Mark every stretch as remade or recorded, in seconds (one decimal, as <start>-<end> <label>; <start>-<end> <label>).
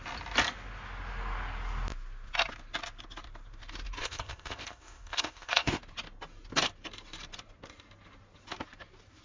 0.0-4.0 recorded; 4.0-5.8 remade; 5.8-9.2 recorded